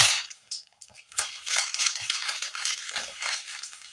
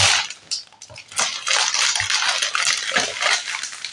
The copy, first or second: first